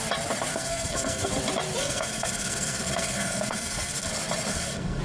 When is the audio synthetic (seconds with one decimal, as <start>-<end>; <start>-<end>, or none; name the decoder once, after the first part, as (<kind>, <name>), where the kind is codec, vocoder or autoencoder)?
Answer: 0.5-1.3 (codec, SNAC); 1.8-4.1; 4.5-5.0